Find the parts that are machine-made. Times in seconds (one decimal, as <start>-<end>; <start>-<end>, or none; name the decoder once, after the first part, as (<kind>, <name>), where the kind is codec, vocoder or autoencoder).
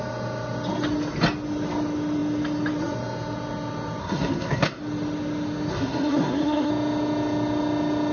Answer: 4.0-4.8 (codec, SNAC); 5.7-6.7